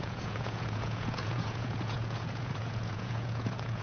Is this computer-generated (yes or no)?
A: yes